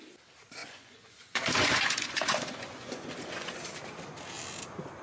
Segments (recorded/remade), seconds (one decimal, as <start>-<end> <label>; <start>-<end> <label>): 0.0-0.6 recorded; 0.6-3.6 remade; 3.6-5.0 recorded